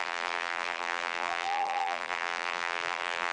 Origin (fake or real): fake